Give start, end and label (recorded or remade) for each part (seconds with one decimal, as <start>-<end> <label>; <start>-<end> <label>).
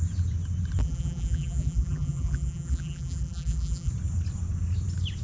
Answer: 0.0-0.8 recorded; 0.8-3.9 remade; 3.9-5.2 recorded